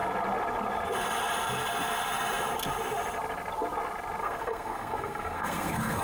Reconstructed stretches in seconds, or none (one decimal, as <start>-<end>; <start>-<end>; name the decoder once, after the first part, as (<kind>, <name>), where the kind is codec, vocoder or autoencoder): 4.2-6.0 (codec, SNAC)

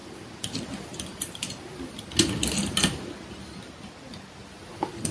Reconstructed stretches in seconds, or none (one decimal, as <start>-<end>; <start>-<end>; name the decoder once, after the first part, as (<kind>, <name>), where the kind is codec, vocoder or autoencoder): 0.0-1.9 (vocoder, BigVGAN v2)

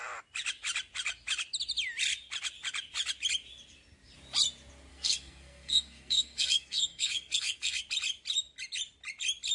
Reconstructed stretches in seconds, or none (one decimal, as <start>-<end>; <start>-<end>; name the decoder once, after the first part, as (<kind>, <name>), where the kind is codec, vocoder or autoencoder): 4.9-7.8 (codec, SNAC)

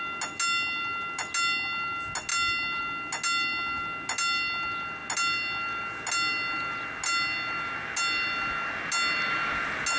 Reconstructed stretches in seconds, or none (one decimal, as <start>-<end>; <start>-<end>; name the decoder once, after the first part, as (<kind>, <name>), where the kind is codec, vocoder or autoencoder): none

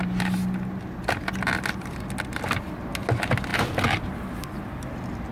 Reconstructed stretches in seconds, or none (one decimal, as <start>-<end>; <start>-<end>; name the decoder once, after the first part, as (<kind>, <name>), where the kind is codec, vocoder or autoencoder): none

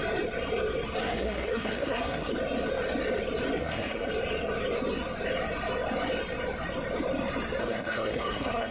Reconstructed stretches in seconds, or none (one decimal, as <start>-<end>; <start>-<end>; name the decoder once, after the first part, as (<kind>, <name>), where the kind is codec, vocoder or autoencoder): 1.0-2.3 (codec, SNAC); 3.6-4.1; 7.6-8.7